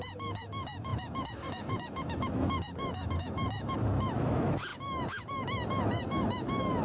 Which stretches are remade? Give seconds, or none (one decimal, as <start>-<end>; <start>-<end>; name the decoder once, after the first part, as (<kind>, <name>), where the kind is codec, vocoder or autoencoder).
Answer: 0.0-6.8 (autoencoder, DAC-VAE)